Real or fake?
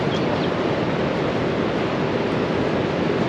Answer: real